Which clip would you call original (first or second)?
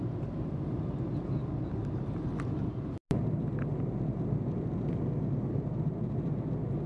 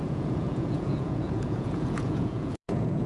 first